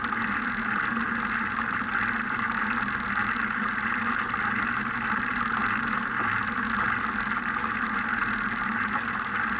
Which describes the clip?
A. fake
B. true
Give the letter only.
B